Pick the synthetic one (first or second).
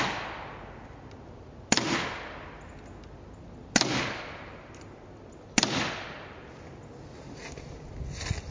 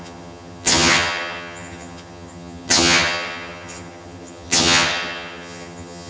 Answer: second